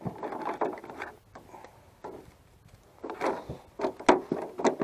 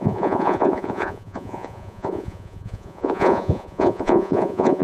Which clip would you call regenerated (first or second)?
second